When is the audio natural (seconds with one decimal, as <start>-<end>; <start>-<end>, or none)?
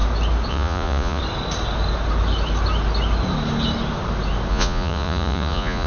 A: 0.0-0.5; 1.2-4.5